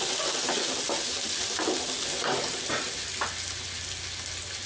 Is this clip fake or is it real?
real